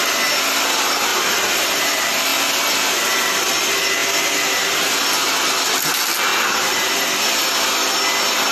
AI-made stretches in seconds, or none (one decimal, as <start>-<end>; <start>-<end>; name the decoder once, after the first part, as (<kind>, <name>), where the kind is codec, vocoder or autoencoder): 1.1-1.9 (vocoder, BigVGAN v2); 6.3-6.9